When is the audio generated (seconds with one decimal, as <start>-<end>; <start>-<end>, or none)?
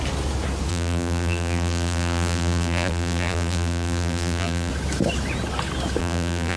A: 0.7-4.7; 6.0-6.6